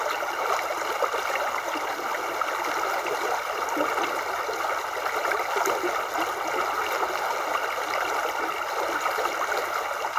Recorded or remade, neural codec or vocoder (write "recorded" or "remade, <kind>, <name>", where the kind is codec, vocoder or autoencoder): recorded